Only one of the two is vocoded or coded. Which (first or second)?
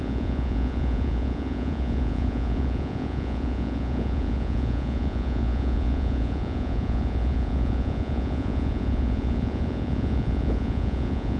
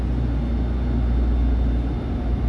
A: first